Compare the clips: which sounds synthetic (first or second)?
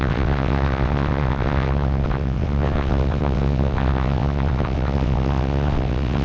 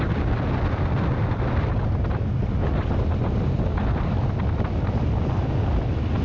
first